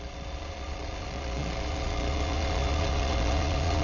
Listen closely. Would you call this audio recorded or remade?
remade